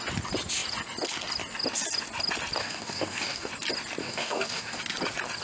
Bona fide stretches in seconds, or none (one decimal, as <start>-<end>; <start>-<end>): 0.0-2.6; 3.5-4.0; 4.8-5.4